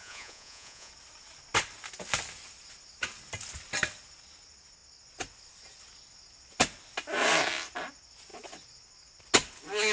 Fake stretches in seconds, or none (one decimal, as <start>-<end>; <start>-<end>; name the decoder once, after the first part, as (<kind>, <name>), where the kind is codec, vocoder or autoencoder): 0.0-0.9 (vocoder, Vocos)